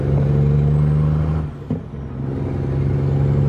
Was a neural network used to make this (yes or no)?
no